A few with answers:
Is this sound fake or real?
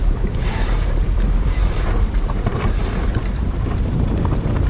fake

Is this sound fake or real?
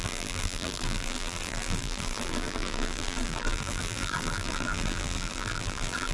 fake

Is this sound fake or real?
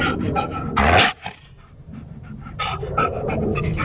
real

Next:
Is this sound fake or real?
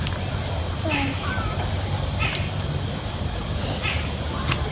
real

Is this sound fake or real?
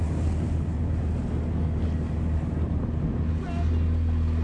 real